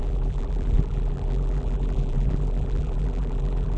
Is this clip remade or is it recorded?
remade